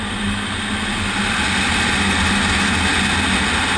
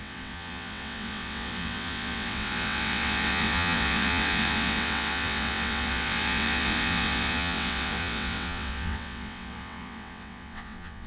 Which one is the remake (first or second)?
second